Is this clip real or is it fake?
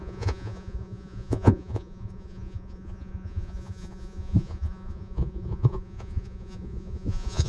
fake